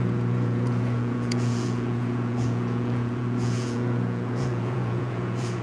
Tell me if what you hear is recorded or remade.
remade